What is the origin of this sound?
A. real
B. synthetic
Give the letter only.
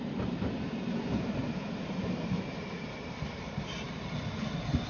B